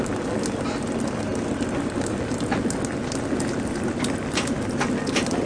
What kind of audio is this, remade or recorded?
recorded